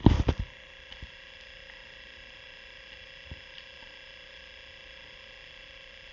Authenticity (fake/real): real